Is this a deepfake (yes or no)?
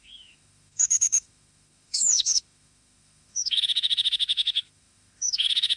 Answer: yes